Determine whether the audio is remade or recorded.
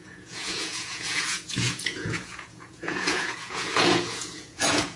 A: remade